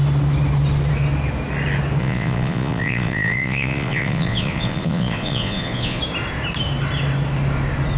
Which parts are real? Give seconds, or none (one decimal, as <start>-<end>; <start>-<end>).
0.0-2.0; 6.0-8.0